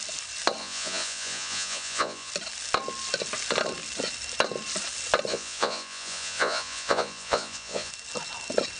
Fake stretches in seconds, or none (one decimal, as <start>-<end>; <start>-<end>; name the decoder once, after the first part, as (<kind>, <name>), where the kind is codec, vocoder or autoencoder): 0.6-2.3 (vocoder, Vocos); 5.3-7.9